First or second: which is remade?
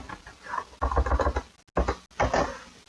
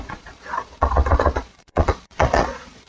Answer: second